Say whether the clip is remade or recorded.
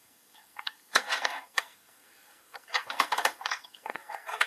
remade